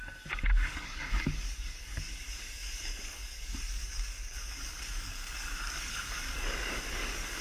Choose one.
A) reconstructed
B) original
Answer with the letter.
A